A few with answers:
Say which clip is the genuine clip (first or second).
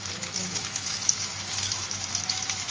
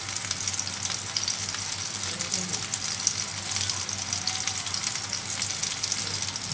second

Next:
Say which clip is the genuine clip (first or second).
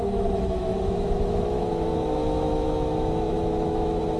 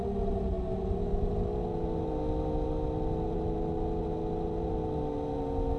second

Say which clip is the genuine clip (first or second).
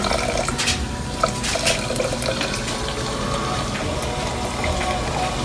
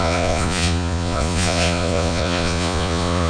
first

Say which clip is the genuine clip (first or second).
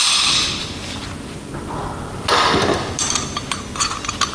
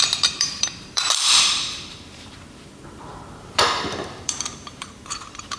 first